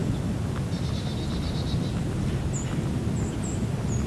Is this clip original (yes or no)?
yes